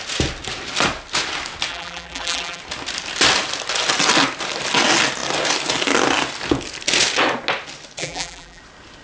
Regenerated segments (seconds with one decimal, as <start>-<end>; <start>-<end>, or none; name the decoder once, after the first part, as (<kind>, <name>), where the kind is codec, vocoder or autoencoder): 1.7-2.6 (vocoder, BigVGAN v2); 8.0-8.6